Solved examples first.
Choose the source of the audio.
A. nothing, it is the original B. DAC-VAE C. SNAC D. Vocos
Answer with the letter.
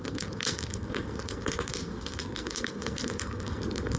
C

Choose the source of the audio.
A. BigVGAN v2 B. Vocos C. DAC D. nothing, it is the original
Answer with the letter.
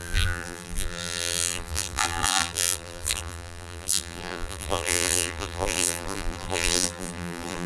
A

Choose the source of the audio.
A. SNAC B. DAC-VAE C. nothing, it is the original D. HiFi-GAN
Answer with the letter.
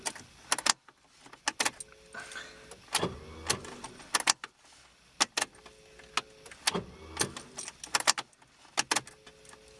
C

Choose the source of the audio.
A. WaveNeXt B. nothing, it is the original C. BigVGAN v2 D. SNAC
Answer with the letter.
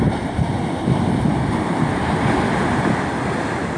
C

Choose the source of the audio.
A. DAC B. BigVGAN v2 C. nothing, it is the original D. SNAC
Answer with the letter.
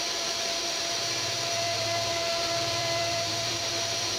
B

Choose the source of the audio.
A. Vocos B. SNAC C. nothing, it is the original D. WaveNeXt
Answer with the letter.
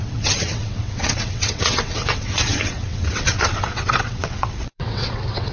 D